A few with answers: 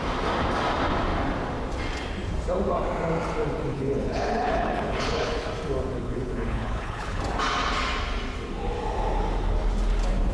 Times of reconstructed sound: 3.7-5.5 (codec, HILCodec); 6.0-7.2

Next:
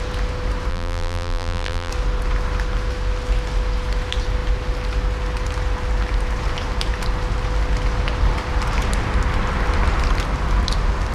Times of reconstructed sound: 0.7-1.9 (vocoder, BigVGAN v2)